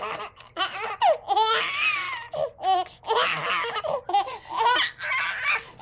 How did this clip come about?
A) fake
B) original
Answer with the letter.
B